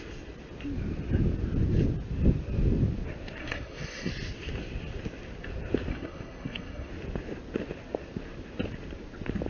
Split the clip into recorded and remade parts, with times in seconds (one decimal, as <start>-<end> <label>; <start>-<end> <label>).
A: 0.0-3.4 recorded; 3.4-4.1 remade; 4.1-5.9 recorded; 5.9-6.9 remade; 6.9-9.5 recorded